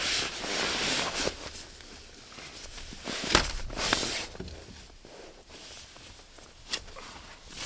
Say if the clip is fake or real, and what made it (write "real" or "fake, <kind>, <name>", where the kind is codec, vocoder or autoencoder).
fake, vocoder, BigVGAN v2